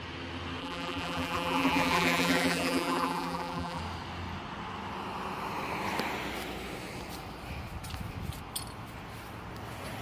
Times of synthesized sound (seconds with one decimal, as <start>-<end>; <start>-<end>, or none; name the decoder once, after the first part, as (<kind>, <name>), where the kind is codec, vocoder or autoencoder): 0.6-3.8 (vocoder, BigVGAN v2)